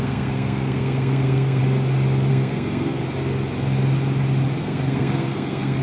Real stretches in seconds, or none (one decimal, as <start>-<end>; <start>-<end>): 1.6-2.3; 3.0-4.6